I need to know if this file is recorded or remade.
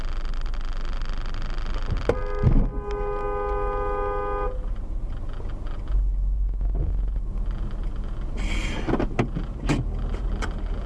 recorded